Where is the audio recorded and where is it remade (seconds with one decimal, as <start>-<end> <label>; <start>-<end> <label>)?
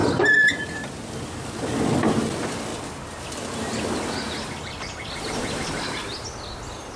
0.0-0.9 remade; 0.9-2.7 recorded; 2.7-5.2 remade; 5.2-7.0 recorded